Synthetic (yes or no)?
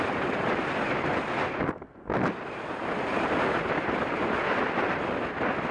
no